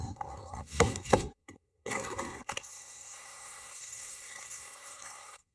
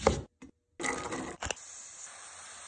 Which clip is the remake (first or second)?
first